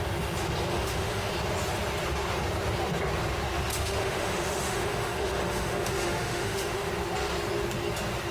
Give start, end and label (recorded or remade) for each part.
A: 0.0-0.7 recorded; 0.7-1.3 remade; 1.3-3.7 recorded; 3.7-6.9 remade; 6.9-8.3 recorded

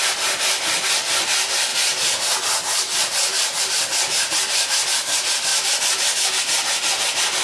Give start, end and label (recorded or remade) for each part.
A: 0.0-7.4 recorded